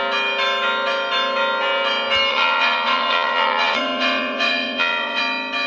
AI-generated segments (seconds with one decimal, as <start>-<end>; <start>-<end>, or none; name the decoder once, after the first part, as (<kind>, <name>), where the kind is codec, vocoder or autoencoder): 2.3-5.2 (vocoder, WaveNeXt)